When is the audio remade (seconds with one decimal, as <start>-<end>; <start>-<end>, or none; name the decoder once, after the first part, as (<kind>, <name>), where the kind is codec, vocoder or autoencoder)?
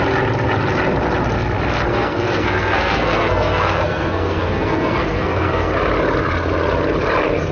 1.9-5.7 (codec, SNAC)